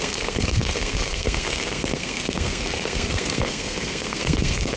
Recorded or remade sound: remade